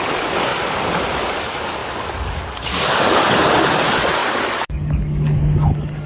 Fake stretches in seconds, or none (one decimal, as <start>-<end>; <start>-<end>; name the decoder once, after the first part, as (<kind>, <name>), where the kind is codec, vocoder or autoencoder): 0.0-0.5 (codec, DAC); 1.4-6.1